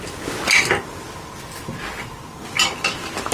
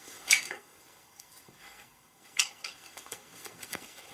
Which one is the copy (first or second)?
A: second